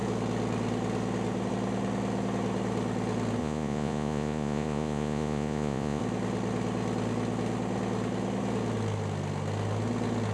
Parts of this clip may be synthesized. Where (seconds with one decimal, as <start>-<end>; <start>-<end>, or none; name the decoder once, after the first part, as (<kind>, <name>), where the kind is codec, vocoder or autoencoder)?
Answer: 3.4-6.0 (vocoder, Vocos)